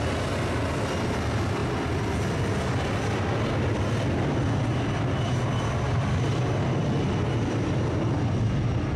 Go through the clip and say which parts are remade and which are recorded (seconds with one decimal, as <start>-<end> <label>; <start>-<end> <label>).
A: 0.0-9.0 recorded